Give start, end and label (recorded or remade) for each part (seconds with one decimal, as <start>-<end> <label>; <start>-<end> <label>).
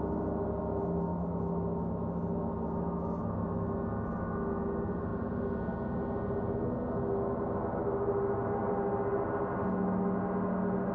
0.0-10.9 recorded